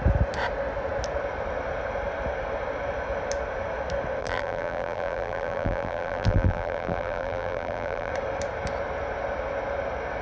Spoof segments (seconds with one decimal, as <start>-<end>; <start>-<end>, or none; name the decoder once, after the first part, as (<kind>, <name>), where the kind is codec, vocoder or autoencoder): 4.2-8.1 (vocoder, BigVGAN v2)